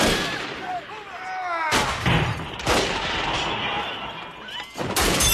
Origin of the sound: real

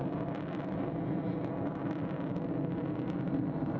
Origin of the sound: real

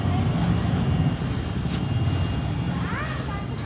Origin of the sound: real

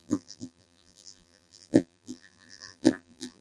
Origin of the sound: fake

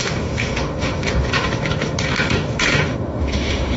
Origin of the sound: fake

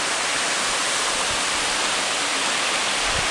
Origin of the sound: real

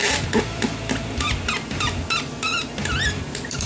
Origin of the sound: fake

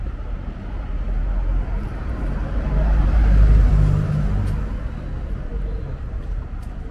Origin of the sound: real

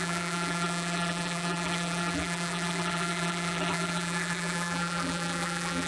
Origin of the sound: fake